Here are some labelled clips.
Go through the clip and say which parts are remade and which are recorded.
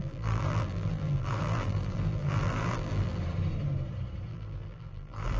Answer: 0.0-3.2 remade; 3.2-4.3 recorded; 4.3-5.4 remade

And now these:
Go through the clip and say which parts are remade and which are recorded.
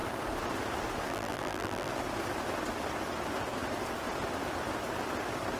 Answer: 0.0-1.1 recorded; 1.1-1.9 remade; 1.9-5.6 recorded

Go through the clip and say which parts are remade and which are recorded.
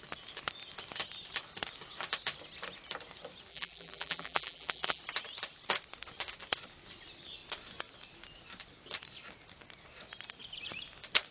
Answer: 0.0-3.5 recorded; 3.5-5.0 remade; 5.0-11.3 recorded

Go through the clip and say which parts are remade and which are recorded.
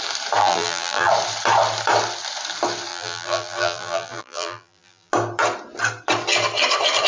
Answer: 0.0-0.4 recorded; 0.4-1.1 remade; 1.1-2.9 recorded; 2.9-5.1 remade; 5.1-7.1 recorded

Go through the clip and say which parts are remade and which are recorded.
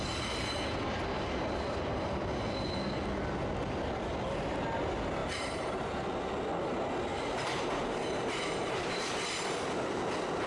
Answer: 0.0-5.2 recorded; 5.2-5.9 remade; 5.9-7.1 recorded; 7.1-9.6 remade; 9.6-10.5 recorded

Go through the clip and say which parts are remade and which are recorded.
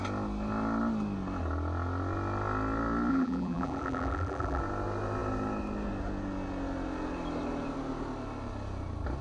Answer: 0.0-3.1 recorded; 3.1-4.6 remade; 4.6-9.2 recorded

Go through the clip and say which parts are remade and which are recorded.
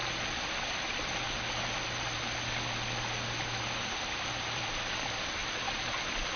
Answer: 0.0-3.8 recorded; 3.8-6.4 remade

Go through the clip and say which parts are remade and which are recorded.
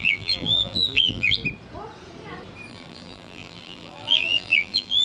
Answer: 0.0-1.4 remade; 1.4-2.7 recorded; 2.7-5.0 remade